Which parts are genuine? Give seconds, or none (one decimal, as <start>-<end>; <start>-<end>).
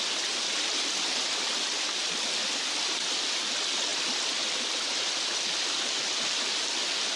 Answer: 0.0-2.0; 3.2-3.9; 5.3-7.2